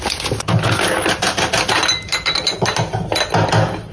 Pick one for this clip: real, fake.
real